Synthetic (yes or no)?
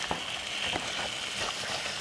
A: no